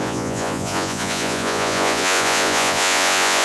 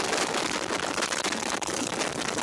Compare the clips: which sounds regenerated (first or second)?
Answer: first